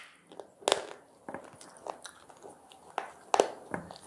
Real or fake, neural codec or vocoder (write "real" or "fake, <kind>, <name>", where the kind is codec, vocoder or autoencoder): real